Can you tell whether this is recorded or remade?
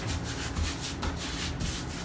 recorded